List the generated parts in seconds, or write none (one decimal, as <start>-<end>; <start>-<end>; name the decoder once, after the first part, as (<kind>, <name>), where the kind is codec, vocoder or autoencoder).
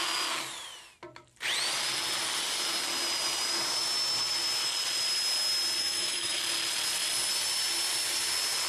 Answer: 5.8-6.4 (autoencoder, DAC-VAE)